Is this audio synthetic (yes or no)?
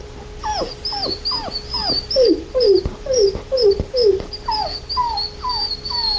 no